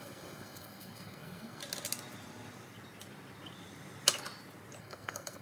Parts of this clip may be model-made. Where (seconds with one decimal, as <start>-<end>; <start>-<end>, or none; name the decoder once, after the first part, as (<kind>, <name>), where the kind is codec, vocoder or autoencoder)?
0.0-1.6 (codec, SNAC); 4.8-5.4